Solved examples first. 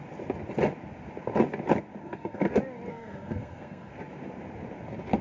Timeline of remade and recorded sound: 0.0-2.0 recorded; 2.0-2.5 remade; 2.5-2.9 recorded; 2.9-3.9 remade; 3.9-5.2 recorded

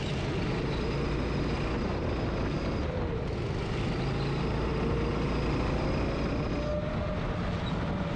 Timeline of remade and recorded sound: 0.0-8.2 recorded

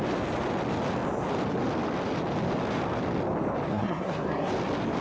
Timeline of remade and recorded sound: 0.0-3.7 recorded; 3.7-4.5 remade; 4.5-5.0 recorded

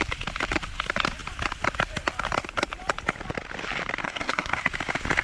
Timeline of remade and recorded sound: 0.0-4.0 recorded; 4.0-4.6 remade; 4.6-5.2 recorded